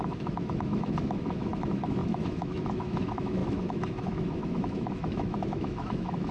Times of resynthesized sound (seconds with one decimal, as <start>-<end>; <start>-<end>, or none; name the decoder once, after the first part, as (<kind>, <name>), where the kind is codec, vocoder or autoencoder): 0.0-6.3 (autoencoder, DAC-VAE)